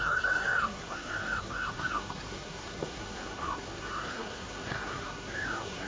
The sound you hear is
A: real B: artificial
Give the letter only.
B